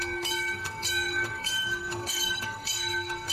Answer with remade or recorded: remade